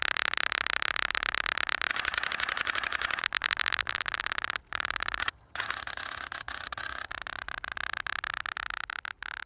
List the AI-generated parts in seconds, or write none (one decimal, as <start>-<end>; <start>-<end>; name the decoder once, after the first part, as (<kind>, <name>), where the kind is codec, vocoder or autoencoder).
1.9-3.2 (vocoder, HiFi-GAN); 5.2-7.1